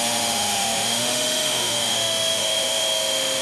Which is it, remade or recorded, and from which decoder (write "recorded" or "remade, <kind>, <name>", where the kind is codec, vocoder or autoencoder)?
remade, autoencoder, DAC-VAE